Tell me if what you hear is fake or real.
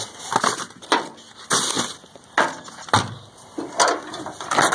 real